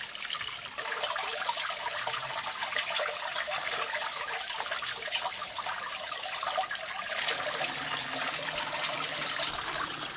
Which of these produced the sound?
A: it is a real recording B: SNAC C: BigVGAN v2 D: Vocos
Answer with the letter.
A